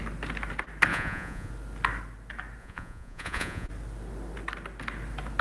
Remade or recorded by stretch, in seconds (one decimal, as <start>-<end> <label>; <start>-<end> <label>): 0.0-0.9 recorded; 0.9-1.5 remade; 1.5-2.6 recorded; 2.6-3.7 remade; 3.7-5.4 recorded